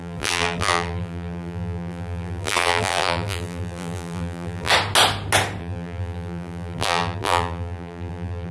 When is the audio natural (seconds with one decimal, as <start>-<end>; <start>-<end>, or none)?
4.7-5.6